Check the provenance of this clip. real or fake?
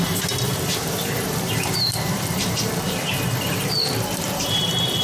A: fake